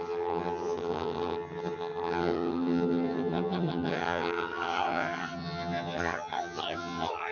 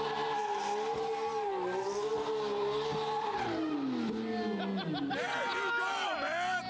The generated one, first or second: first